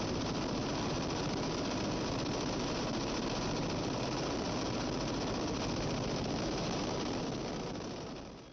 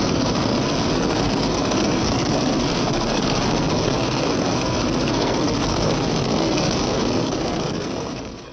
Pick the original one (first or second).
first